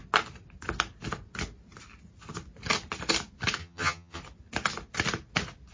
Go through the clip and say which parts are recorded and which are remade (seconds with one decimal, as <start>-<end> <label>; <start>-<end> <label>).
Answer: 0.0-3.6 recorded; 3.6-4.2 remade; 4.2-5.7 recorded